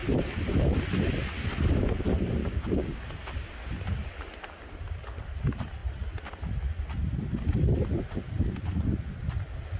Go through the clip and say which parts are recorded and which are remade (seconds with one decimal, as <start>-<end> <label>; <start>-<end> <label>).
0.0-2.4 recorded; 2.4-3.0 remade; 3.0-9.8 recorded